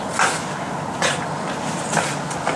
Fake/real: real